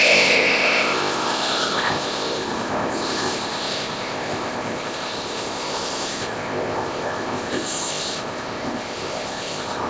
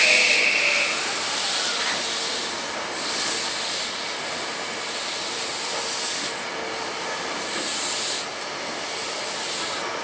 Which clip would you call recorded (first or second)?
second